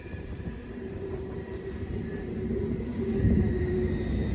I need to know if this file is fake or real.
fake